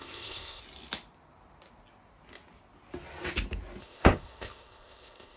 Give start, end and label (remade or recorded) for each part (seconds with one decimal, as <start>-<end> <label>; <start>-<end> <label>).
0.0-0.6 remade; 0.6-3.8 recorded; 3.8-5.4 remade